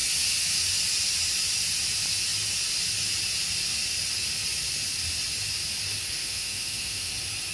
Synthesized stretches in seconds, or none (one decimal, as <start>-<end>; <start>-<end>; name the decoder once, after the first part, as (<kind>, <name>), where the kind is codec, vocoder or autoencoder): 6.2-7.1 (autoencoder, DAC-VAE)